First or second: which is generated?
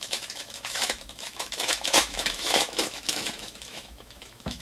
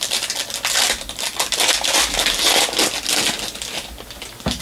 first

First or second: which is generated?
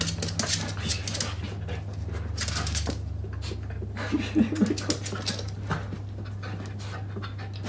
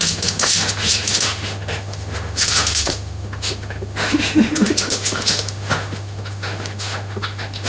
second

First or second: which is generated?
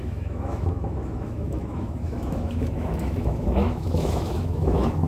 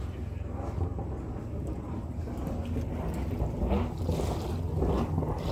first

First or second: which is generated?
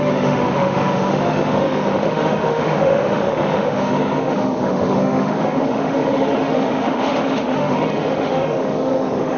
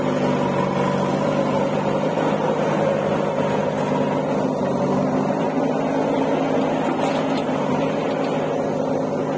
first